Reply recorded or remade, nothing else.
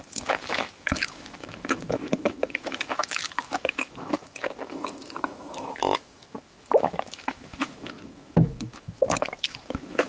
remade